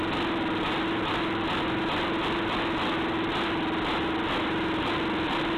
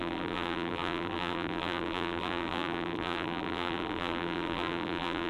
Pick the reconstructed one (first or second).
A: second